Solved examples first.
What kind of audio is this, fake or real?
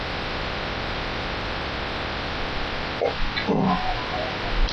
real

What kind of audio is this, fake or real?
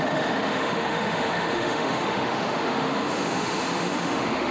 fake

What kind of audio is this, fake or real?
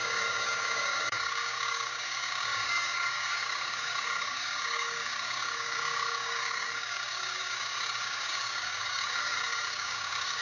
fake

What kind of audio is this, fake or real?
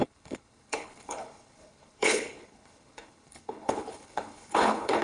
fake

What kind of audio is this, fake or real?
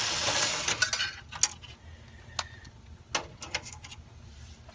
real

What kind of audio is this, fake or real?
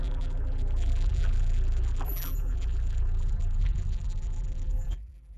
fake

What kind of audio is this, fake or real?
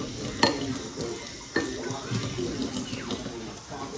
real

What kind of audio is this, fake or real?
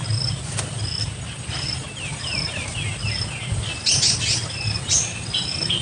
real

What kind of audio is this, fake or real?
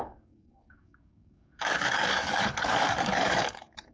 fake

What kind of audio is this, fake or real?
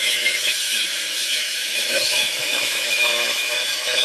fake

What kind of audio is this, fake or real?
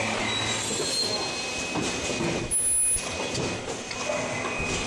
real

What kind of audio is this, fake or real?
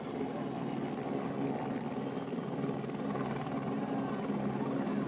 real